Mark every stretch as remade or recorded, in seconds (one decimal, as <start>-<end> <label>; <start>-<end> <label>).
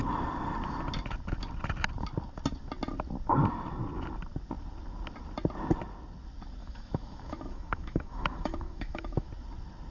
0.0-6.6 recorded; 6.6-9.3 remade; 9.3-9.9 recorded